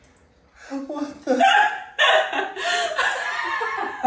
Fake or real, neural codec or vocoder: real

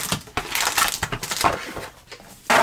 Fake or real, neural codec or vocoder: real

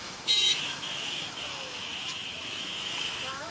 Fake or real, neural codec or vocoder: fake, autoencoder, DAC-VAE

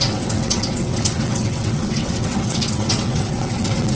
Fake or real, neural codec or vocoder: fake, vocoder, WaveNeXt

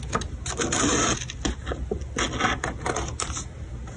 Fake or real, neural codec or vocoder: real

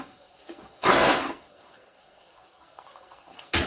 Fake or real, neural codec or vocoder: fake, codec, SNAC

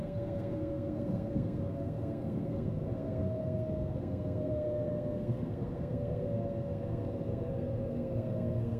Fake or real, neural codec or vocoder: fake, codec, SNAC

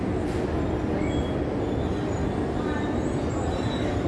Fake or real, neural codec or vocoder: real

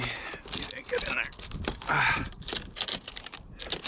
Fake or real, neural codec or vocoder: real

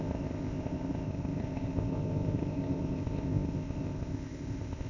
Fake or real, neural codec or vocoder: fake, codec, ZipCodec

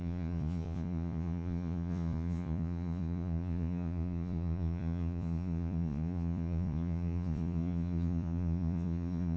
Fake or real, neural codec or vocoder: fake, vocoder, Vocos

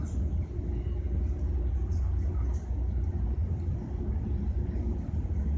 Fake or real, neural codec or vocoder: real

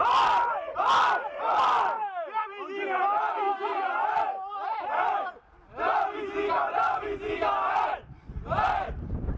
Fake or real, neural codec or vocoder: real